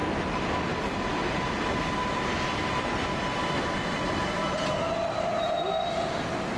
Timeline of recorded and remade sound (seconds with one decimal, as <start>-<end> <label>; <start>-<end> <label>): 0.0-6.6 recorded